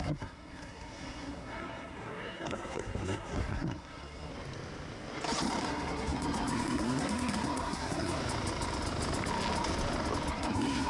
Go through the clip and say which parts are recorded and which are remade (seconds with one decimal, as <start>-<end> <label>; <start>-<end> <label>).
0.0-4.3 remade; 4.3-5.6 recorded; 5.6-8.2 remade; 8.2-10.3 recorded; 10.3-10.9 remade